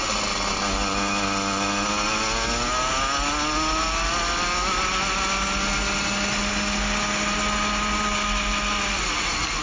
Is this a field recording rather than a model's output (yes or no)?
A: yes